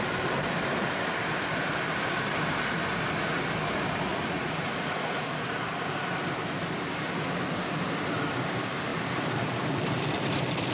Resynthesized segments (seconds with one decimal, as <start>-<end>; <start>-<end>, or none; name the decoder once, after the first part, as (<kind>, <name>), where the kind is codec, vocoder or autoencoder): 4.1-5.4 (vocoder, Vocos)